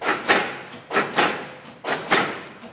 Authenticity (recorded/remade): recorded